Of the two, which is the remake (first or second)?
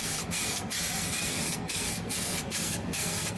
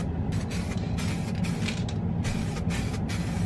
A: first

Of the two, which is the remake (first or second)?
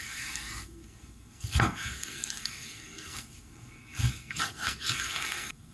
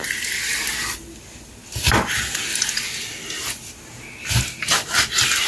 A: first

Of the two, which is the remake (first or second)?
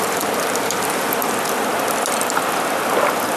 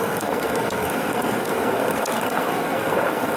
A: second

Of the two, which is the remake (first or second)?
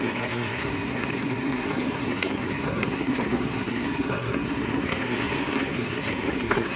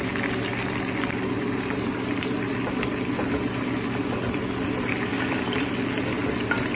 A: first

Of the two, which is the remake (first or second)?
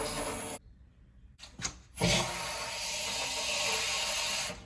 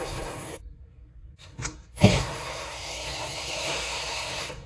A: second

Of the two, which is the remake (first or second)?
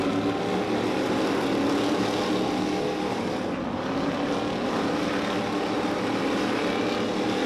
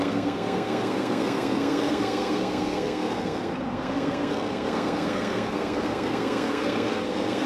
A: second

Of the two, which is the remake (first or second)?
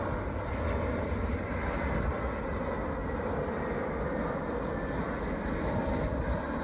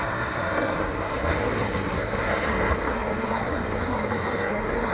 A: second